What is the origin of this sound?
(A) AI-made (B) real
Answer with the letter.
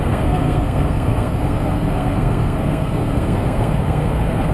A